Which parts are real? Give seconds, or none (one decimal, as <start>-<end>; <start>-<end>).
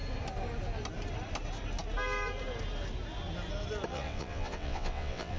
0.0-3.9